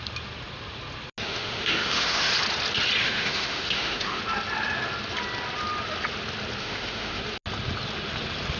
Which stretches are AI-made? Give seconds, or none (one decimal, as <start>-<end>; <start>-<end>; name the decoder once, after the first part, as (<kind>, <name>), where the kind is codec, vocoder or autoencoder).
1.2-2.3 (autoencoder, DAC-VAE); 3.0-4.2; 6.6-7.2